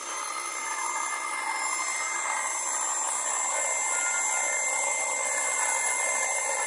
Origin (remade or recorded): recorded